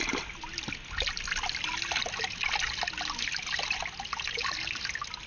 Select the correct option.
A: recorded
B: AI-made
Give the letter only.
A